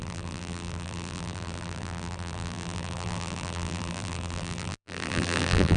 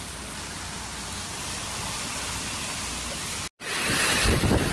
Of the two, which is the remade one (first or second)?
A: first